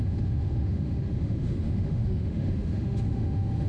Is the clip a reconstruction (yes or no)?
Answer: yes